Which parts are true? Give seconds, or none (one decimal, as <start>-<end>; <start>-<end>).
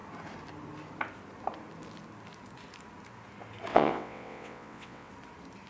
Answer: 0.0-3.7; 5.1-5.7